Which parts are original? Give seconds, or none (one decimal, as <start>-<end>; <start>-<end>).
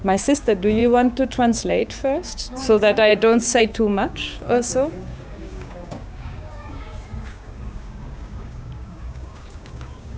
none